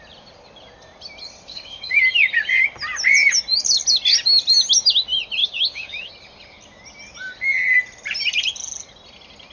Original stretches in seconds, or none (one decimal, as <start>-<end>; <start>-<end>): 0.0-1.5; 2.0-5.4; 6.1-9.5